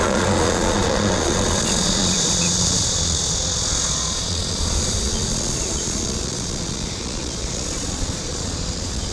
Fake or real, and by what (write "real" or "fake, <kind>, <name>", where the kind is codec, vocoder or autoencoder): fake, vocoder, Vocos